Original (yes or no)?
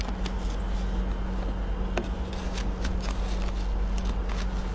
yes